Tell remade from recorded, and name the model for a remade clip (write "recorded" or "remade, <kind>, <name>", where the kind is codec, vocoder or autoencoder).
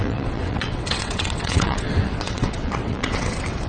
remade, vocoder, WaveNeXt